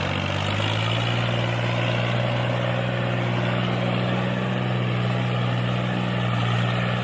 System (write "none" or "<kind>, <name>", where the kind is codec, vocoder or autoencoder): none